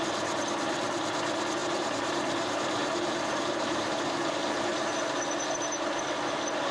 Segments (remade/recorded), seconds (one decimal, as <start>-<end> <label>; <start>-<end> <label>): 0.0-1.6 recorded; 1.6-3.9 remade; 3.9-6.7 recorded